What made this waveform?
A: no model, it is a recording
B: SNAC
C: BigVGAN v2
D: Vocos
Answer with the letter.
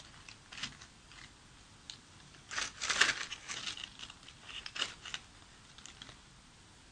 A